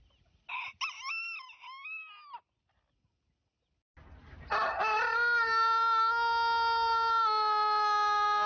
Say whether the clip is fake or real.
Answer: real